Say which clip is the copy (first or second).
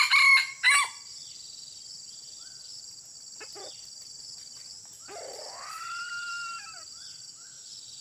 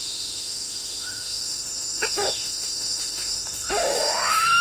second